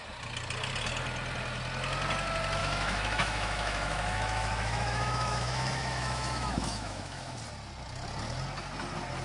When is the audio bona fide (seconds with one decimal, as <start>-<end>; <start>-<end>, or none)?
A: 0.0-2.6; 7.4-9.2